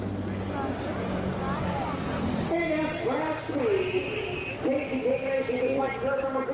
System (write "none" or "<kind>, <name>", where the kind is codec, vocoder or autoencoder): none